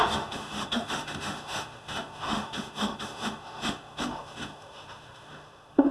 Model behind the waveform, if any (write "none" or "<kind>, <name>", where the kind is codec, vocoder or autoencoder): autoencoder, DAC-VAE